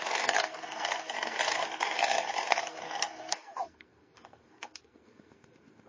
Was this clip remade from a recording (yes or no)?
yes